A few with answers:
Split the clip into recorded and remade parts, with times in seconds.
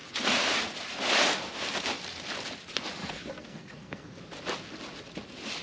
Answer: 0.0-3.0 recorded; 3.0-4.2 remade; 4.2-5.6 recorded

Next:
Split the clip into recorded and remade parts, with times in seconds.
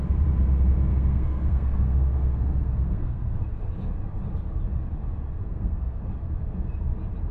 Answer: 0.0-0.9 recorded; 0.9-3.4 remade; 3.4-5.4 recorded; 5.4-6.0 remade; 6.0-7.3 recorded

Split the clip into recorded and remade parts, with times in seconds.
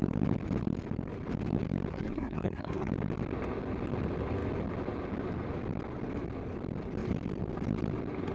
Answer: 0.0-1.9 recorded; 1.9-2.9 remade; 2.9-8.3 recorded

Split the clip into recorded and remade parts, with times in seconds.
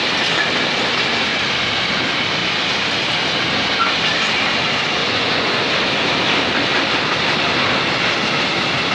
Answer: 0.0-5.0 recorded; 5.0-5.6 remade; 5.6-8.9 recorded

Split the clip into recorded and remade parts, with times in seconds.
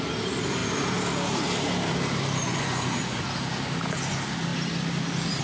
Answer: 0.0-2.4 recorded; 2.4-3.2 remade; 3.2-5.4 recorded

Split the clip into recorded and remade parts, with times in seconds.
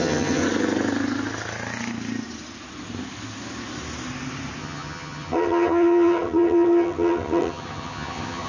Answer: 0.0-0.4 remade; 0.4-4.6 recorded; 4.6-8.5 remade